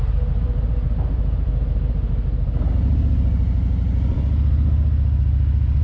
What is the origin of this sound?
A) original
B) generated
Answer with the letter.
A